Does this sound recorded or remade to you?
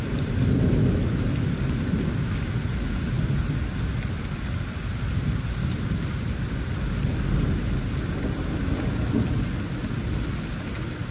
recorded